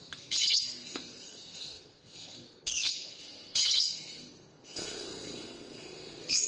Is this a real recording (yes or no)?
no